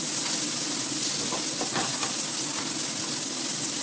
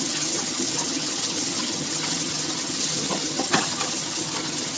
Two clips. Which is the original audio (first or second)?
first